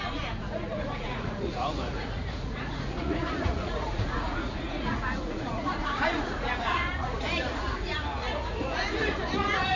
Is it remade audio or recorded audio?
remade